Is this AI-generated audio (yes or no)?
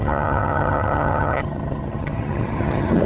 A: yes